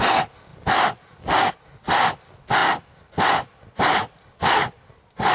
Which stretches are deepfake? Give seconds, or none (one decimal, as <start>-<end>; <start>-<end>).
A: none